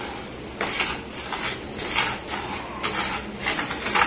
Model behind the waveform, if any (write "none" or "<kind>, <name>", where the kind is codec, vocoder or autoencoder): none